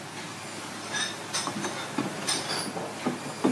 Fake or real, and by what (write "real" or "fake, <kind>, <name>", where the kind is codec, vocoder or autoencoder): real